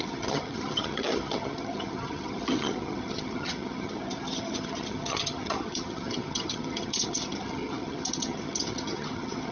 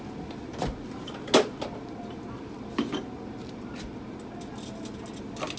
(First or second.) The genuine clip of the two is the second